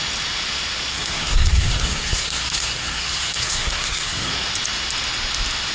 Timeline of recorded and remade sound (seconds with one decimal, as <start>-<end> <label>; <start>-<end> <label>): 0.0-0.9 recorded; 0.9-4.3 remade; 4.3-5.7 recorded